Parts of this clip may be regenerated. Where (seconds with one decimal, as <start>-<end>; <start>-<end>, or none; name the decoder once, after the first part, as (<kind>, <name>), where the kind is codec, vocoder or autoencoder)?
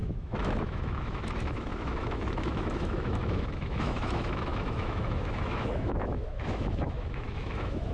0.0-7.9 (autoencoder, DAC-VAE)